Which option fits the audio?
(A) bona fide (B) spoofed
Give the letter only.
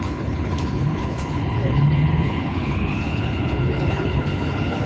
B